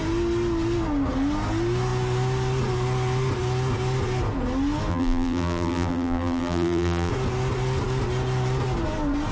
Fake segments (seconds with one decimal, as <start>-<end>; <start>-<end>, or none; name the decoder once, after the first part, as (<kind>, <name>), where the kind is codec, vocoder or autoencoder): 4.9-7.1 (vocoder, BigVGAN v2)